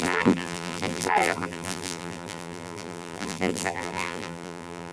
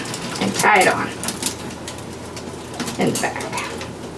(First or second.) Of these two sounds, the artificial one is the first